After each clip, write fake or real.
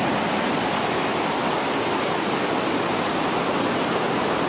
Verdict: real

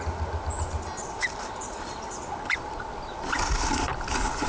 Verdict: real